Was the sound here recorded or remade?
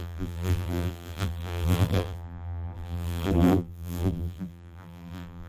remade